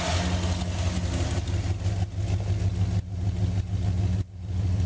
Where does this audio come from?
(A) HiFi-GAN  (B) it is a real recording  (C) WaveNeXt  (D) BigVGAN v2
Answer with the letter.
B